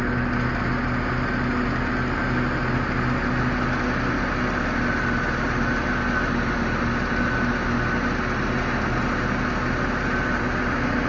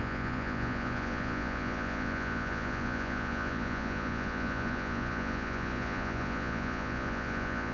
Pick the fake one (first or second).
second